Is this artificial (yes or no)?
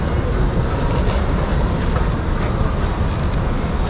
no